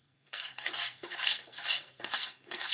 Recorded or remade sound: remade